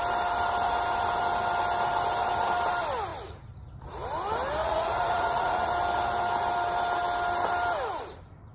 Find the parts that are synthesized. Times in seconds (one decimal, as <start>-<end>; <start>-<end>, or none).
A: 4.6-5.7